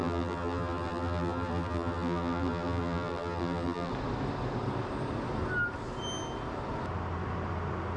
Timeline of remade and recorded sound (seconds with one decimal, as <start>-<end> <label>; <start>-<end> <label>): 0.0-3.9 remade; 3.9-8.0 recorded